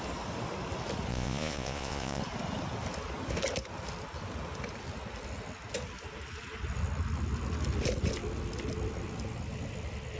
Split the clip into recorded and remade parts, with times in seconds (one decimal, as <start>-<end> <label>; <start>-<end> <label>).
0.0-1.1 recorded; 1.1-2.2 remade; 2.2-10.2 recorded